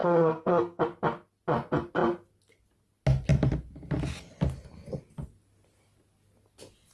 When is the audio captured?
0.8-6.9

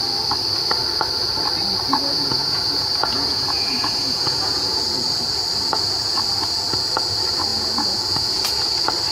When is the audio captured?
0.0-2.1; 4.8-7.5; 8.5-9.1

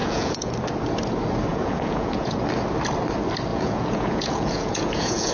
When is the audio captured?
0.5-1.5; 2.4-3.5

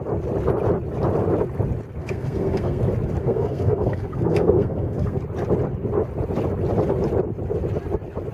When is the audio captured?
0.0-2.0; 2.8-3.2; 5.2-8.3